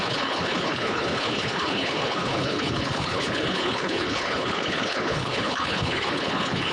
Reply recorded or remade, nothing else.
remade